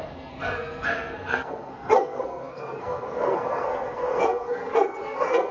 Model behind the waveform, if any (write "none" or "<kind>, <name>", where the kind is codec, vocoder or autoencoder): codec, SNAC